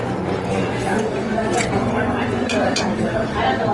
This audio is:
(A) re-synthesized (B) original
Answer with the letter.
A